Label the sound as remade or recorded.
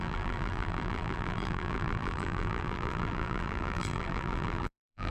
remade